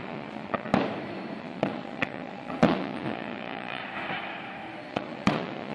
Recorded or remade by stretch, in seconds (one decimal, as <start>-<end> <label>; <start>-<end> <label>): 0.0-0.7 remade; 0.7-1.4 recorded; 1.4-3.8 remade; 3.8-4.9 recorded; 4.9-5.7 remade